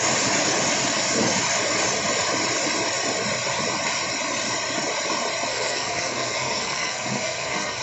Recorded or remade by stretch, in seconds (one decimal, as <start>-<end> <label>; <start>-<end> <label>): 0.0-5.5 recorded; 5.5-7.8 remade